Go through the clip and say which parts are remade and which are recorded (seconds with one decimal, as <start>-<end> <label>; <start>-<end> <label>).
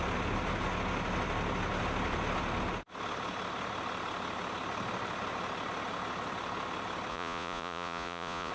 0.0-7.1 recorded; 7.1-8.5 remade